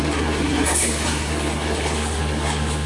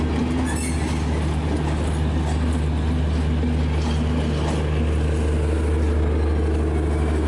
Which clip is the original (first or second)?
second